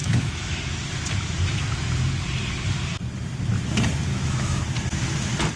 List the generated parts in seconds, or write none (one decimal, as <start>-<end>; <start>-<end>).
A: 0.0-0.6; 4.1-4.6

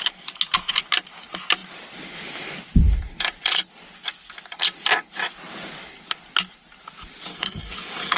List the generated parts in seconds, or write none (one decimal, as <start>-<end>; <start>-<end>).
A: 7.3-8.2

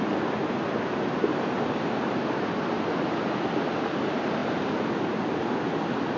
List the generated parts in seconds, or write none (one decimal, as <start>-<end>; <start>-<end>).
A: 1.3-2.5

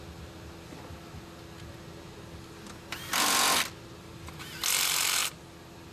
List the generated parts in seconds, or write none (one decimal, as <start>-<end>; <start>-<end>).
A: none